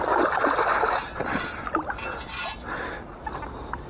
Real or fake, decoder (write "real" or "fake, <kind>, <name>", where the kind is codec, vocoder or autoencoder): real